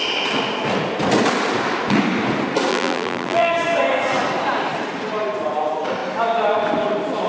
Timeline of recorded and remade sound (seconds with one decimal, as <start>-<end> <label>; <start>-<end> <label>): 0.0-2.7 recorded; 2.7-3.5 remade; 3.5-7.3 recorded

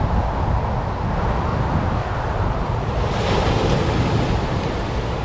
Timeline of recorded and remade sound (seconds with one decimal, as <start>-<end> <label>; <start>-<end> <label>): 0.0-1.5 recorded; 1.5-3.9 remade; 3.9-5.2 recorded

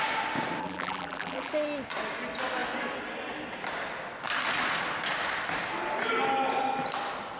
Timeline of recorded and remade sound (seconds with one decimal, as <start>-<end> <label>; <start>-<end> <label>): 0.0-0.6 recorded; 0.6-1.5 remade; 1.5-7.4 recorded

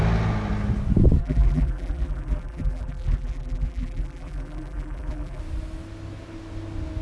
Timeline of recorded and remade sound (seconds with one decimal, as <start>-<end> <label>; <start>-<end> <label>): 0.0-1.2 recorded; 1.2-5.4 remade; 5.4-7.0 recorded

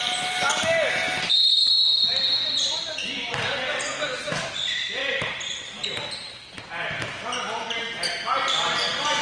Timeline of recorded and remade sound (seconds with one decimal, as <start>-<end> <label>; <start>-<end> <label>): 0.0-1.0 recorded; 1.0-1.7 remade; 1.7-5.0 recorded; 5.0-6.5 remade; 6.5-9.2 recorded

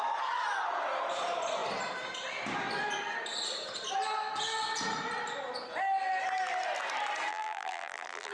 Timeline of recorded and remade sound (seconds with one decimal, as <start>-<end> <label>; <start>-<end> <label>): 0.0-7.3 recorded; 7.3-8.3 remade